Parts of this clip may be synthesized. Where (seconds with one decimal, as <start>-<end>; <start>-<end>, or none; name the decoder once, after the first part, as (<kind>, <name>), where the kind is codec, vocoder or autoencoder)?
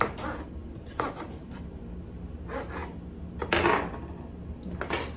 0.6-1.8 (vocoder, BigVGAN v2)